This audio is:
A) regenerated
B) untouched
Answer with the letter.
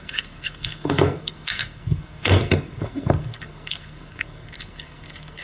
A